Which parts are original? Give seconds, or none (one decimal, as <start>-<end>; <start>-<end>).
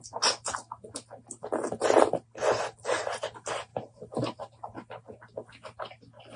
0.0-3.7; 4.4-6.4